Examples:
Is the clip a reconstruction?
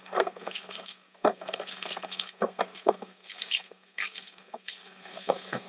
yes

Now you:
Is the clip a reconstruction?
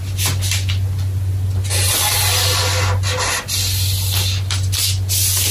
no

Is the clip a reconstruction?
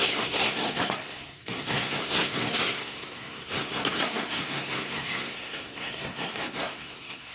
yes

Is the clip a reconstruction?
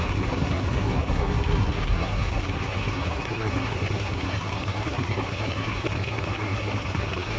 yes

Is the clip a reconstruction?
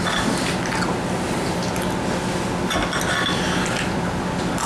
no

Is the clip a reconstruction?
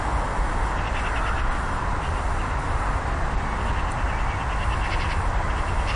no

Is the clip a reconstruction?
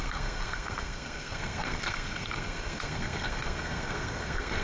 yes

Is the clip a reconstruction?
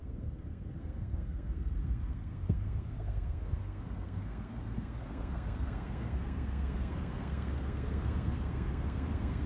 yes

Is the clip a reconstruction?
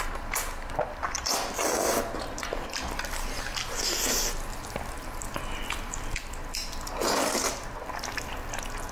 no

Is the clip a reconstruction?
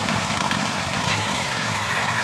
yes